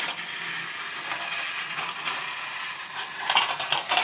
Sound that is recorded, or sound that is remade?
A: recorded